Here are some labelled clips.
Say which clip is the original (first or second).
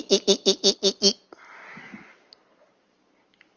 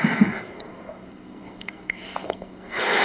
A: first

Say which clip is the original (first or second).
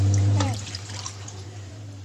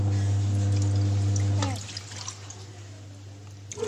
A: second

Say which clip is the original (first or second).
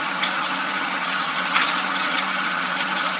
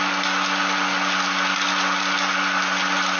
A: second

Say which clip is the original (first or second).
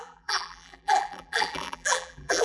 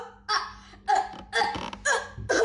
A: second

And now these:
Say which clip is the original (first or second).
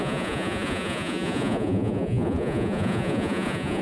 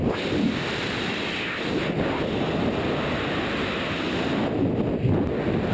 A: second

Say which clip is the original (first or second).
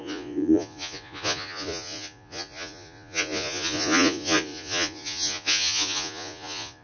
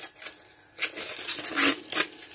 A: second